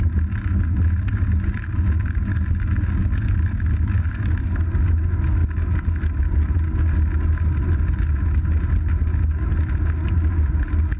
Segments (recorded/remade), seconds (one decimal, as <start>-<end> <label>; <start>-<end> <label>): 0.0-11.0 recorded